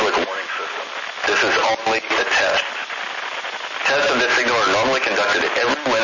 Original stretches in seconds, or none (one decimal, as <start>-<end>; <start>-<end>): 0.0-6.0